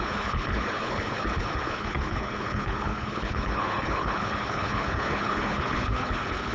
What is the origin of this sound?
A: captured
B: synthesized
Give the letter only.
B